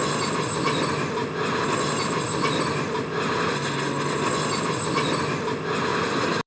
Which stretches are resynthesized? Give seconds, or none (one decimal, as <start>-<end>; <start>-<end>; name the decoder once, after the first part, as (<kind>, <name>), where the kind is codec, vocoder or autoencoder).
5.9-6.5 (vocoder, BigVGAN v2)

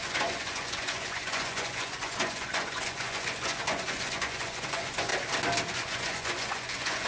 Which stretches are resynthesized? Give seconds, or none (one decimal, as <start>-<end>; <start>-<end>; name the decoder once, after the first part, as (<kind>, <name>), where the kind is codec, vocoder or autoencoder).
0.0-5.1 (vocoder, Vocos); 5.7-7.1

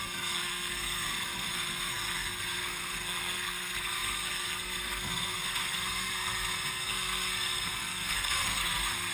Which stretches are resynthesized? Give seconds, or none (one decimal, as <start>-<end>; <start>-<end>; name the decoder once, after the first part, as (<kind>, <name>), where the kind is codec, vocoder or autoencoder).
0.0-9.1 (codec, SNAC)